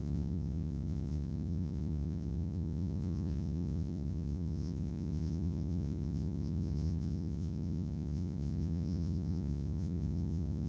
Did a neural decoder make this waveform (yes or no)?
yes